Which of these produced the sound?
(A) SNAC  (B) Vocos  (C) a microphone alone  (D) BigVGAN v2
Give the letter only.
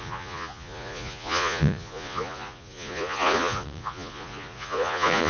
B